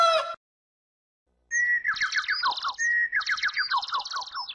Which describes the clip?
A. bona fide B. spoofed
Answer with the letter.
A